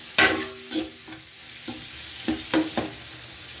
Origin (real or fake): real